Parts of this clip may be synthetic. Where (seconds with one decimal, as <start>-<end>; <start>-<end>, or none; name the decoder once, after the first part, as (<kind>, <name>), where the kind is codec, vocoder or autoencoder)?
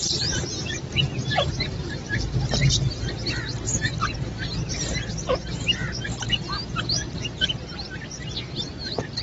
none